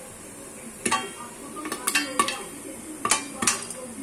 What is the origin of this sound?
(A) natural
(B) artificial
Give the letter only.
A